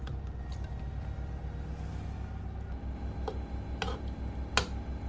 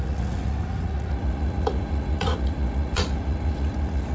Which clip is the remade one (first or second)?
second